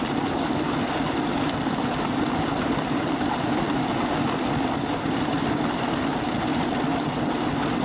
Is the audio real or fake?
real